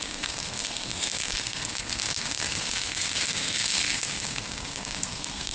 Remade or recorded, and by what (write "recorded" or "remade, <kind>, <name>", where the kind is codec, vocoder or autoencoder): remade, codec, SNAC